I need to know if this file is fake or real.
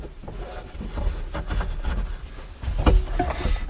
real